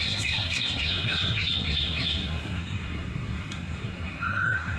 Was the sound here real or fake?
fake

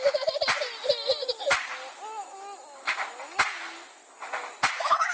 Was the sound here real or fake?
real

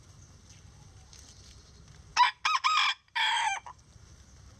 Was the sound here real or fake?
real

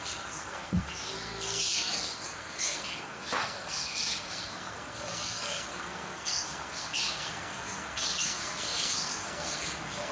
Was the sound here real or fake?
fake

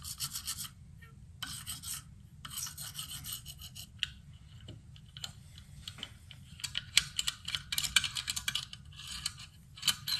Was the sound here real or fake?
real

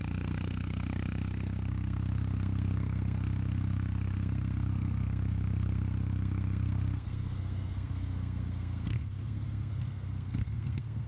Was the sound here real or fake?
fake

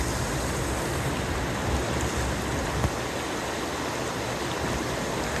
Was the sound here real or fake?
real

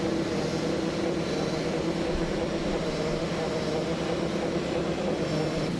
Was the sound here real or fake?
real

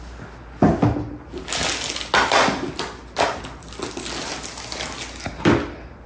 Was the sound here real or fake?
real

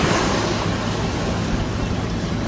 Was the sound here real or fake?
real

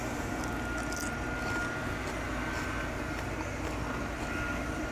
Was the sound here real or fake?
real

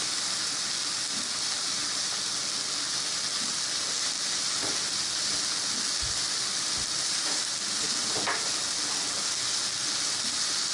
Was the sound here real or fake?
real